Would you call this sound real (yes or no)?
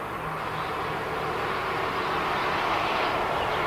yes